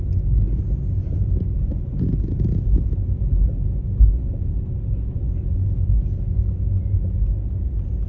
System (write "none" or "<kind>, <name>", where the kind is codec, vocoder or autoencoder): none